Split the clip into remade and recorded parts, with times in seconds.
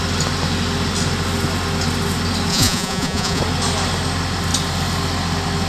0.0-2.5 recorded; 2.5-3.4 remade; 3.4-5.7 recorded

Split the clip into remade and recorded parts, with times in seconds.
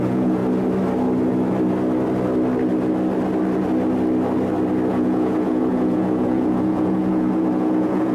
0.0-0.4 remade; 0.4-4.9 recorded; 4.9-8.1 remade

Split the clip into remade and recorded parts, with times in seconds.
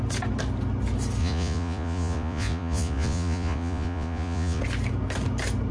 0.0-1.2 recorded; 1.2-4.6 remade; 4.6-5.7 recorded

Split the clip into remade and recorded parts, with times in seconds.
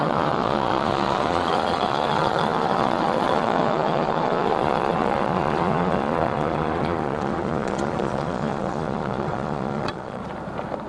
0.0-10.2 remade; 10.2-10.9 recorded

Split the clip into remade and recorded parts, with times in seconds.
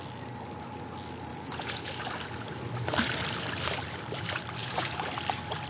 0.0-1.3 recorded; 1.3-1.9 remade; 1.9-4.6 recorded; 4.6-5.1 remade; 5.1-5.7 recorded